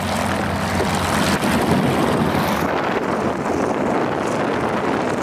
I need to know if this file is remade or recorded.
recorded